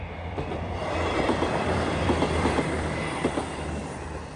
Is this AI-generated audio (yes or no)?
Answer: yes